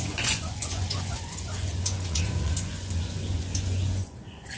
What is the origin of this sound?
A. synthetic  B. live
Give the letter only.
A